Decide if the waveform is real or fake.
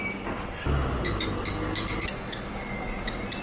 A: real